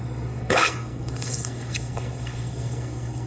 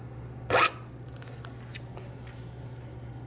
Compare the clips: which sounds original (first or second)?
second